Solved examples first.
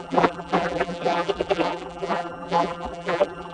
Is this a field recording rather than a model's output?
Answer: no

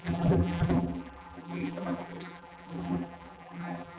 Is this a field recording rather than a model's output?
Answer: no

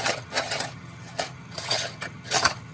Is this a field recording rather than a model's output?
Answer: no